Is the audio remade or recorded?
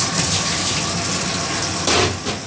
recorded